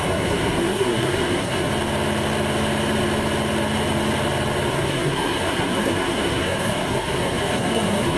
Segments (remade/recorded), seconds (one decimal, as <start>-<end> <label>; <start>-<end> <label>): 0.0-1.7 remade; 1.7-4.7 recorded; 4.7-8.2 remade

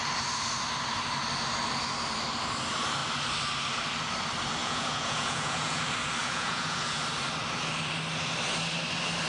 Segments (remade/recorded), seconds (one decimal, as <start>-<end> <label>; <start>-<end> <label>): 0.0-4.6 recorded; 4.6-5.8 remade; 5.8-6.2 recorded; 6.2-7.0 remade; 7.0-9.3 recorded